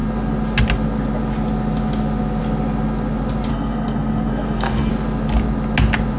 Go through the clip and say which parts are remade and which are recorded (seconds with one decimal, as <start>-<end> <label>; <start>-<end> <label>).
0.0-3.5 recorded; 3.5-4.9 remade; 4.9-6.2 recorded

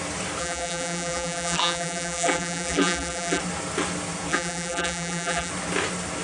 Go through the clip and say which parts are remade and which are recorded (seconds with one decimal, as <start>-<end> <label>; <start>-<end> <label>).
0.0-0.4 recorded; 0.4-3.4 remade; 3.4-4.3 recorded; 4.3-5.5 remade; 5.5-6.2 recorded

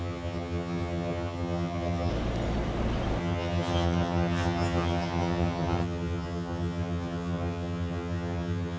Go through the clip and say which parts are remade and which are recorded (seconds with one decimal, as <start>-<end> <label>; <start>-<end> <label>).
0.0-2.1 remade; 2.1-3.2 recorded; 3.2-8.8 remade